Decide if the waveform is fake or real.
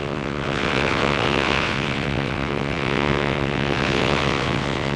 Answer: fake